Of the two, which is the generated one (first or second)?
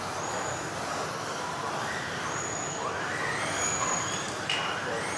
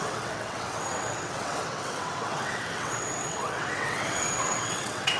second